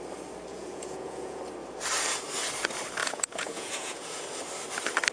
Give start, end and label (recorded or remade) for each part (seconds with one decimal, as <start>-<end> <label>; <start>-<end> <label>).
0.0-0.5 recorded; 0.5-1.4 remade; 1.4-3.0 recorded; 3.0-4.2 remade; 4.2-5.1 recorded